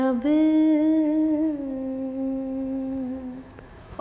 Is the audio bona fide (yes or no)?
no